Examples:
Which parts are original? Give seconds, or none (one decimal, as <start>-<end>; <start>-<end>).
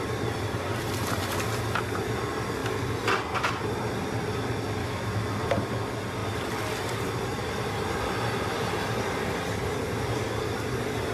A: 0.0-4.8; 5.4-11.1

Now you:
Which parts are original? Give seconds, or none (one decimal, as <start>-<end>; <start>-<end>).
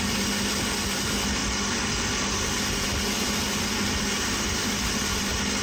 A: 0.0-5.6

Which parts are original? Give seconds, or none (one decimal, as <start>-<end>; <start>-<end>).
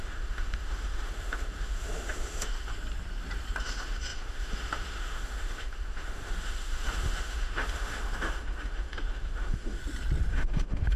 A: 2.7-3.6; 9.8-10.3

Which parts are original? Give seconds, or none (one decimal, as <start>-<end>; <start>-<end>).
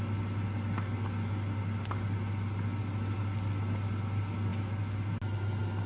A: 0.0-5.9